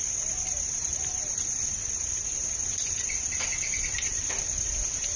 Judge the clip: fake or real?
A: real